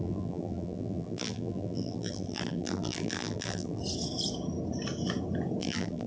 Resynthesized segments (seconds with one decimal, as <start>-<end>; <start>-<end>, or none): 0.0-3.8; 5.6-6.1